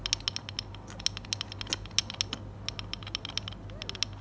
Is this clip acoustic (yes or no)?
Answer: yes